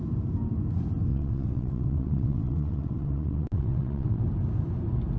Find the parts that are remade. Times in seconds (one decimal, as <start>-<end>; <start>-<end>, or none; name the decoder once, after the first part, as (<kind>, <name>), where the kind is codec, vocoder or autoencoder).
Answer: 1.1-4.2 (vocoder, WaveNeXt)